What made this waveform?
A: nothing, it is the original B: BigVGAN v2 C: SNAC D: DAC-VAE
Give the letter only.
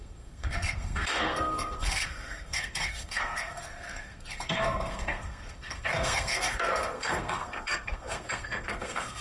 C